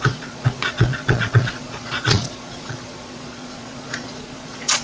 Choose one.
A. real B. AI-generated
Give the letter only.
B